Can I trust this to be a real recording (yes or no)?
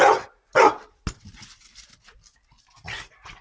yes